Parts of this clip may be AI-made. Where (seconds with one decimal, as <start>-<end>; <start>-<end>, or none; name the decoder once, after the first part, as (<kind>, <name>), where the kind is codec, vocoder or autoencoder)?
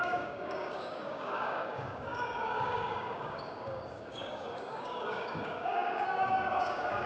0.0-7.1 (codec, DAC)